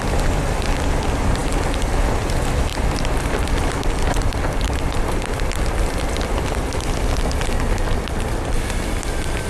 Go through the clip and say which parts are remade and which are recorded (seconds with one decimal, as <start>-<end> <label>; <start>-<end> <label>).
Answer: 0.0-1.4 recorded; 1.4-1.9 remade; 1.9-2.7 recorded; 2.7-6.1 remade; 6.1-9.5 recorded